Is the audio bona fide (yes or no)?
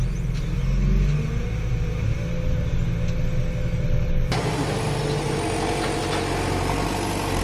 yes